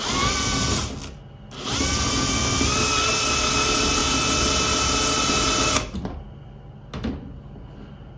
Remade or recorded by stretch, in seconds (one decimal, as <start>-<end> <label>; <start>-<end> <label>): 0.0-8.2 recorded